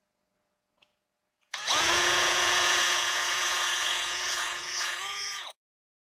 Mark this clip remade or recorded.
remade